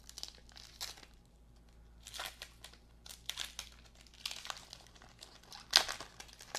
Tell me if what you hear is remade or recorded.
recorded